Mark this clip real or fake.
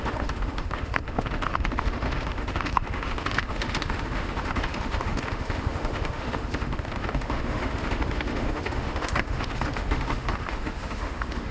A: fake